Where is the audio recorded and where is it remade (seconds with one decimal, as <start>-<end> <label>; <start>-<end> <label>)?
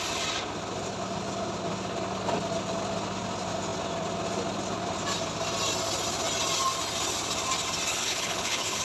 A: 0.0-7.9 recorded; 7.9-8.8 remade